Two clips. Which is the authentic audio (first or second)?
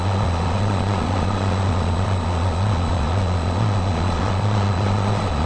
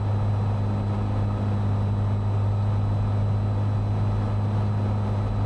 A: second